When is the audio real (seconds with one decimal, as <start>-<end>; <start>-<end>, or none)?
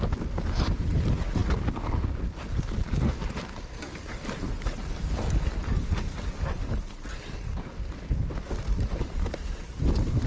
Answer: 0.0-10.3